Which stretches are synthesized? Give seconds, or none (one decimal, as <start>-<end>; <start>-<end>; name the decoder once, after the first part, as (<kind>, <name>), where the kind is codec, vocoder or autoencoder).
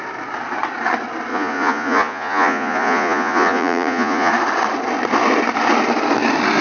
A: 1.3-4.3 (vocoder, Vocos)